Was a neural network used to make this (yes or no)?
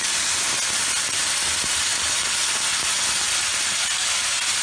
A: no